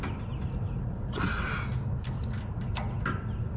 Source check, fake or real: real